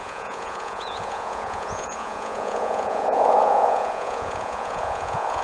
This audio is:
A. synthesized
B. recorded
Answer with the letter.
A